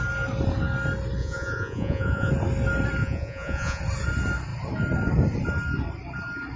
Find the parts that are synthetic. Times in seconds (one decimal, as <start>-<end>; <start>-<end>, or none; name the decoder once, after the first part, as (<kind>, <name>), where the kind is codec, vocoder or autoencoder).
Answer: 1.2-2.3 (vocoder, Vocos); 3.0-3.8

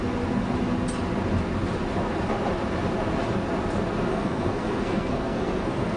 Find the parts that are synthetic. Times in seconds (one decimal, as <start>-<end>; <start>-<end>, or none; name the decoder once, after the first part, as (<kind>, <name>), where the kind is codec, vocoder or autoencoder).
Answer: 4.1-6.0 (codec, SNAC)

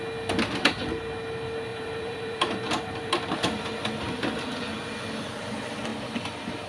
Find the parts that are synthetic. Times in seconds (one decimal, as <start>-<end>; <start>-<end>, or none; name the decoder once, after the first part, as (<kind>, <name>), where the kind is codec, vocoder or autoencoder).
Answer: 1.7-3.6 (vocoder, BigVGAN v2)

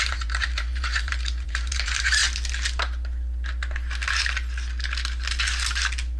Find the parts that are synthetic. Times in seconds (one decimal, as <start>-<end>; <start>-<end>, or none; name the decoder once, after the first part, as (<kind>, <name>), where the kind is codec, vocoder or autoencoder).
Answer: 0.0-2.2 (vocoder, BigVGAN v2)